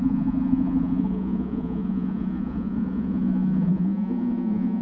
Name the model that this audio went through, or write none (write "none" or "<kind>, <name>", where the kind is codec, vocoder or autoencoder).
vocoder, Vocos